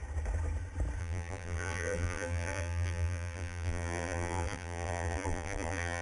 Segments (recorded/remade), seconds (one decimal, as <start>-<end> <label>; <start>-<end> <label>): 0.0-1.0 recorded; 1.0-6.0 remade